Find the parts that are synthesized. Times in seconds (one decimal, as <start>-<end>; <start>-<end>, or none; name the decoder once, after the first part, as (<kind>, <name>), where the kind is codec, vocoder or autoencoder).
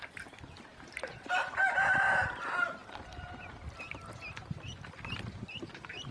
none